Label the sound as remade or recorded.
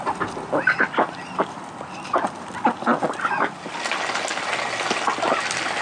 recorded